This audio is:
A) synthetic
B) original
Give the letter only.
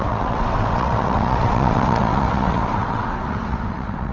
A